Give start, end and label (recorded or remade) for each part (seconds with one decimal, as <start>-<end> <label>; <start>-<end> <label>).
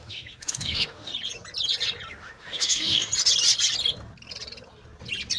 0.0-1.1 remade; 1.1-2.1 recorded; 2.1-3.1 remade; 3.1-5.4 recorded